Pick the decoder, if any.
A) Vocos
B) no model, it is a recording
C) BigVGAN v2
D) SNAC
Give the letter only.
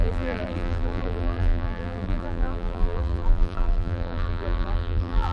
C